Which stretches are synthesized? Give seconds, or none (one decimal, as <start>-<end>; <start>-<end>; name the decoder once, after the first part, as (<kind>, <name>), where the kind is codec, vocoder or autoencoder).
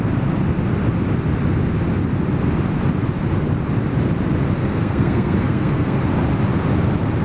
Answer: 4.6-6.0 (codec, SNAC)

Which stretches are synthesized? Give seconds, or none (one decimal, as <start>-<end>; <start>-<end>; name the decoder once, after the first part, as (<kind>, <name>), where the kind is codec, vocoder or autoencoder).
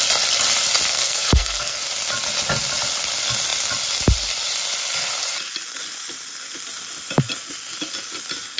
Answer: 0.9-1.8 (codec, SNAC)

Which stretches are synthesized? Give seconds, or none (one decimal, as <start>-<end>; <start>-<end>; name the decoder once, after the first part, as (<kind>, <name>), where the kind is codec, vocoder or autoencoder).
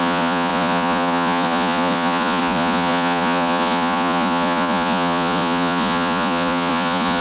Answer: 0.0-7.2 (vocoder, Vocos)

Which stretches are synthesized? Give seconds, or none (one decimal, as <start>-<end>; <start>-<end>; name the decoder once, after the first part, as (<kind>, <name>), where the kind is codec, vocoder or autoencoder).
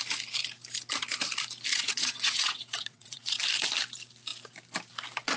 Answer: 1.7-3.4 (vocoder, WaveNeXt)